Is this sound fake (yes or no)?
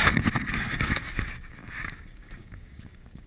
yes